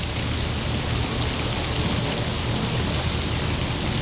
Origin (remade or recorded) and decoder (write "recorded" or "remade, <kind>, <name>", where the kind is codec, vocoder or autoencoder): recorded